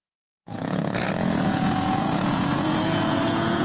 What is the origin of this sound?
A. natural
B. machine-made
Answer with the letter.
B